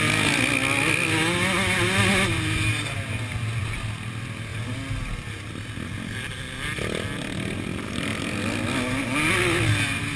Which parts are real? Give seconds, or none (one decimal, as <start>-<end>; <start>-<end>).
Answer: 0.0-10.2